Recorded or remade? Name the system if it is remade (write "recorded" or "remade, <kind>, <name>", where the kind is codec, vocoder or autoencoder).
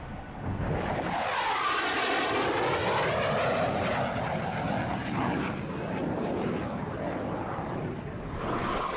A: recorded